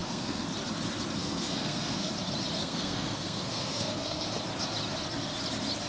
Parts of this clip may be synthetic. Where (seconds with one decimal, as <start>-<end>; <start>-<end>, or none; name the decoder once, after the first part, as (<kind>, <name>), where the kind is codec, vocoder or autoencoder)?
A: 0.0-0.5 (codec, SNAC); 1.2-2.1; 2.6-4.3